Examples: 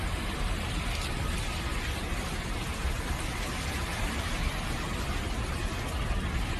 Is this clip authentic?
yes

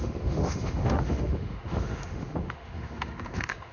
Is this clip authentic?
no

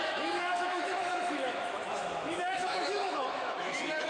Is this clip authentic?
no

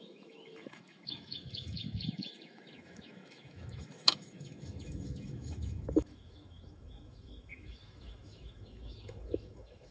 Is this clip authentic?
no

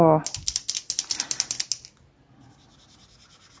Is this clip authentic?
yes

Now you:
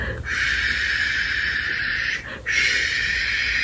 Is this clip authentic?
yes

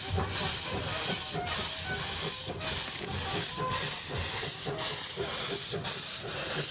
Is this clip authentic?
yes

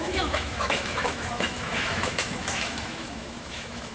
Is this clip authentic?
no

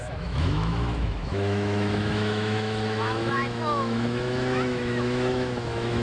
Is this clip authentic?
no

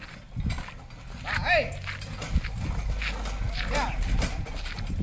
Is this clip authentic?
yes